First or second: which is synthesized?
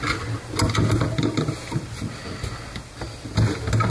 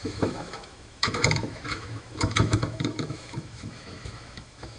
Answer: second